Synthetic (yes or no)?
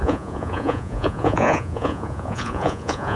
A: yes